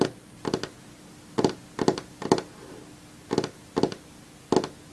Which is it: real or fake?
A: real